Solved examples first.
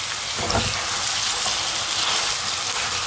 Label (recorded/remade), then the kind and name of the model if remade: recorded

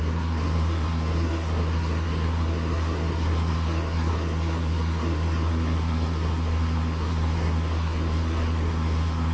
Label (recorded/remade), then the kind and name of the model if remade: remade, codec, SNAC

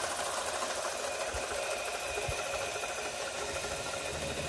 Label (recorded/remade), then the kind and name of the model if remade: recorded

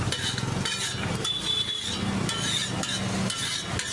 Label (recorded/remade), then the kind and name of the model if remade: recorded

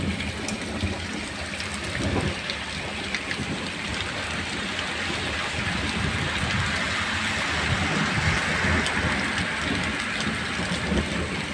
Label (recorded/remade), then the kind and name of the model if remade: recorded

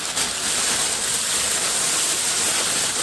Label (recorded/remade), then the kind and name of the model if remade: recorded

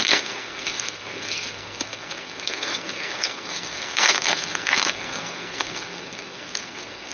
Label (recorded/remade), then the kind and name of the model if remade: remade, codec, SNAC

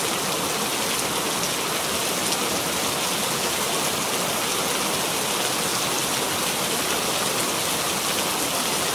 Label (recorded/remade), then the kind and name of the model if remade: recorded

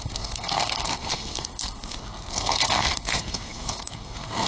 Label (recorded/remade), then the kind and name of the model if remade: remade, codec, SNAC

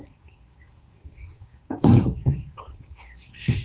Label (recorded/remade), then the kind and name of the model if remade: remade, codec, SNAC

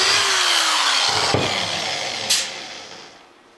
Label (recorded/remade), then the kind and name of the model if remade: recorded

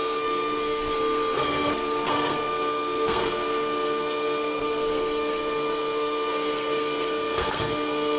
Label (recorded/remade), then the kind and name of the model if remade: remade, codec, SNAC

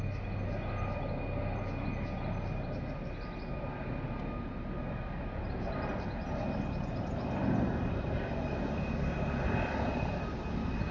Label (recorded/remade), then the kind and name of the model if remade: recorded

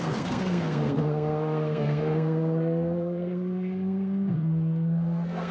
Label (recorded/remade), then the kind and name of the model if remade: remade, codec, SNAC